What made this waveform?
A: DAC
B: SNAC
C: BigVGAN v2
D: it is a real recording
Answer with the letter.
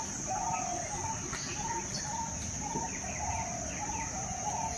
D